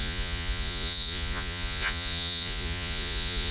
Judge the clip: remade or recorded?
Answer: remade